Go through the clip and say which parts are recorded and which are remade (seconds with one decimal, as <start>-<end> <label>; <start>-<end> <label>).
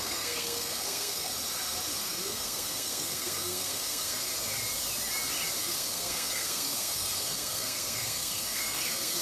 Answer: 0.0-1.3 remade; 1.3-2.0 recorded; 2.0-4.3 remade; 4.3-5.6 recorded; 5.6-9.2 remade